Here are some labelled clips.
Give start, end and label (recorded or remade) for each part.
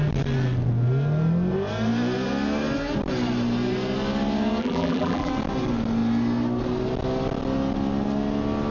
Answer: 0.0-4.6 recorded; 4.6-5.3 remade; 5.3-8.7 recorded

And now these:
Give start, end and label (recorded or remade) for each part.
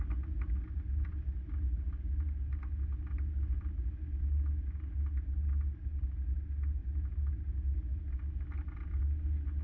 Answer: 0.0-9.6 recorded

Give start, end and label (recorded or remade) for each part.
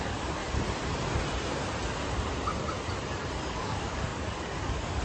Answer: 0.0-0.4 remade; 0.4-3.4 recorded; 3.4-5.0 remade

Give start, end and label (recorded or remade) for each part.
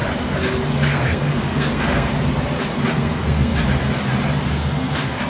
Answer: 0.0-0.7 recorded; 0.7-2.1 remade; 2.1-2.9 recorded; 2.9-3.5 remade; 3.5-4.5 recorded; 4.5-5.3 remade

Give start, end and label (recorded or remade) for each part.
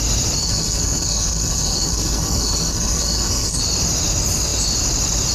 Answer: 0.0-0.4 recorded; 0.4-3.6 remade; 3.6-5.3 recorded